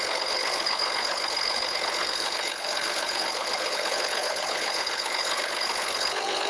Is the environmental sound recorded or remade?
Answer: remade